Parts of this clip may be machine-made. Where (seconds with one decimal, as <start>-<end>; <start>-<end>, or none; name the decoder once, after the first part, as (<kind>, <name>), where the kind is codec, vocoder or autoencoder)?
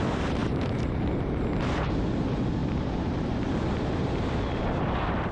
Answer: 0.4-1.1 (vocoder, BigVGAN v2); 2.6-4.3